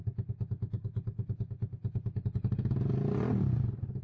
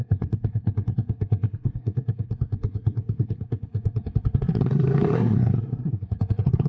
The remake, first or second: second